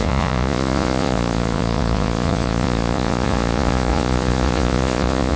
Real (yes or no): no